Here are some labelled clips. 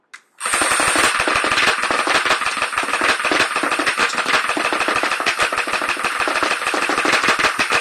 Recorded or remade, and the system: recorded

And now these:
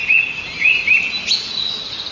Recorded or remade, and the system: recorded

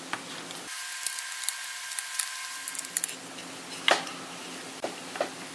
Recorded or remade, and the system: recorded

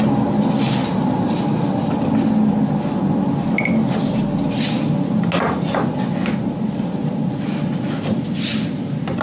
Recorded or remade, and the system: recorded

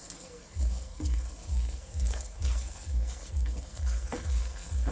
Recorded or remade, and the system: remade, codec, SNAC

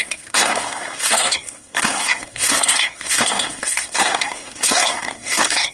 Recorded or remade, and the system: remade, codec, SNAC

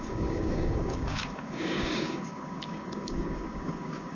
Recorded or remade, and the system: remade, codec, DAC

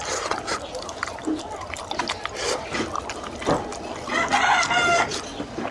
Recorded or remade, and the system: recorded